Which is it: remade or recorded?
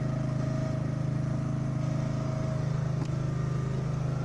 recorded